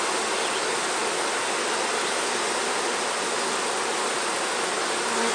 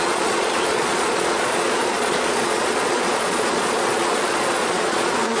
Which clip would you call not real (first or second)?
second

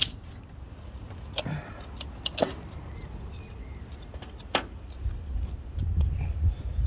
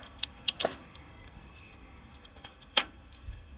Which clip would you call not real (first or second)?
second